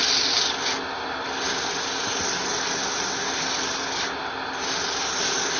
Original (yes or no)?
yes